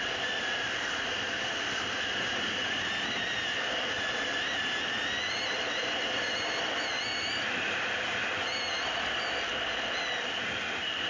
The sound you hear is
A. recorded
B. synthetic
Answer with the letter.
A